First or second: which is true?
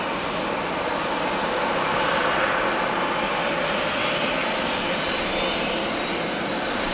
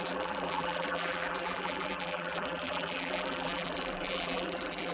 first